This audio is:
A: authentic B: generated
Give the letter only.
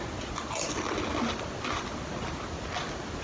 A